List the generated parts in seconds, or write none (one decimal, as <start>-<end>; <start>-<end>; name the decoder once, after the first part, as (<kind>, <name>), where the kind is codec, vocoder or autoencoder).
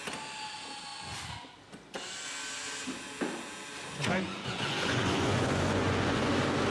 3.9-6.3 (vocoder, Vocos)